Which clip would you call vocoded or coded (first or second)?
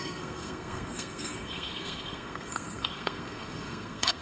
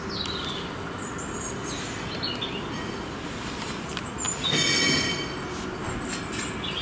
first